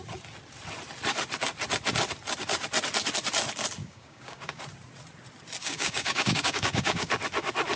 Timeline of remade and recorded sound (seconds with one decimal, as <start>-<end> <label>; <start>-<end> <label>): 0.0-3.8 recorded; 3.8-4.6 remade; 4.6-5.6 recorded; 5.6-7.1 remade; 7.1-7.8 recorded